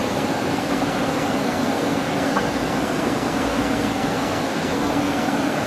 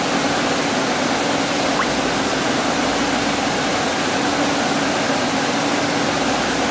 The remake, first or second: first